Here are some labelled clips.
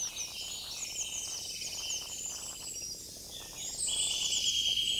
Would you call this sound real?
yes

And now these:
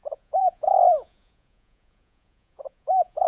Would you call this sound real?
no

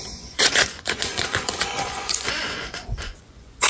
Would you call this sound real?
no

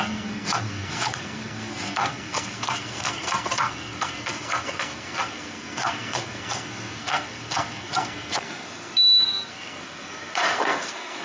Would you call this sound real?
no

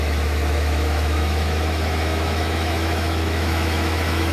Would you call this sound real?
no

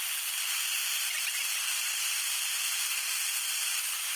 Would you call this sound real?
no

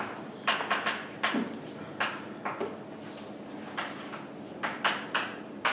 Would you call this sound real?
yes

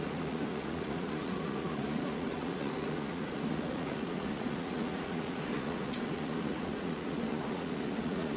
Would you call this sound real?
no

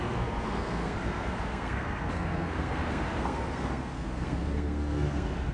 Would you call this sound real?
no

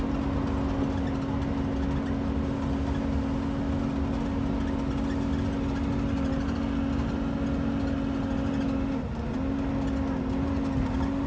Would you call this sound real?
yes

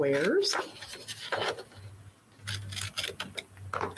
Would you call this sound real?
yes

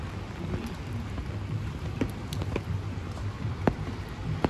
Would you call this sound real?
yes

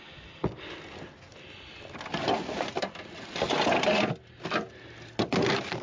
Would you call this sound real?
yes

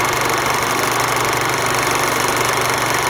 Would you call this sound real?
yes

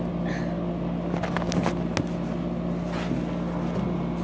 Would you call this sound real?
yes